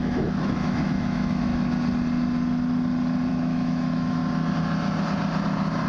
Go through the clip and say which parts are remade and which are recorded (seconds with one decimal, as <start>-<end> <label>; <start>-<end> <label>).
0.0-1.5 remade; 1.5-3.3 recorded; 3.3-4.2 remade; 4.2-5.9 recorded